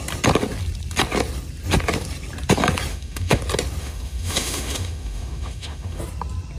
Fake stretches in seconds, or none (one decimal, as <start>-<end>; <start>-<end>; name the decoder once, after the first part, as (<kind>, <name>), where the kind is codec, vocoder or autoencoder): 2.9-3.4 (autoencoder, DAC-VAE); 3.8-6.0